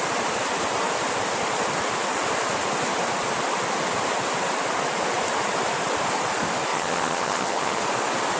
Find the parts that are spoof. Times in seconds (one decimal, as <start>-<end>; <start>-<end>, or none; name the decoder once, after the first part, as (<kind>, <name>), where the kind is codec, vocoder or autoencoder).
6.7-7.8 (vocoder, HiFi-GAN)